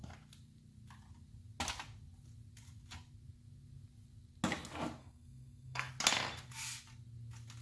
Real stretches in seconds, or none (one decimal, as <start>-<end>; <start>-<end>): 0.0-5.0; 5.9-7.6